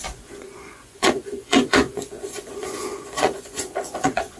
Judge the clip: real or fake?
fake